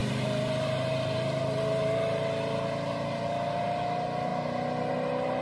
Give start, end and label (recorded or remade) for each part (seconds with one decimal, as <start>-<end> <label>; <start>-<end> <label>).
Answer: 0.0-2.2 remade; 2.2-5.4 recorded